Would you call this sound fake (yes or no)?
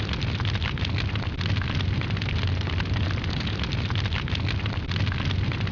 no